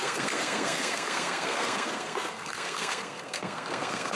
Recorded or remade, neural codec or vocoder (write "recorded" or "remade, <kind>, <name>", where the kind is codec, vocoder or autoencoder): remade, codec, SNAC